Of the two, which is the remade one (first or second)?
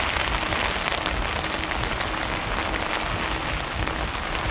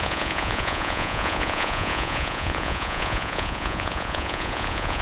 second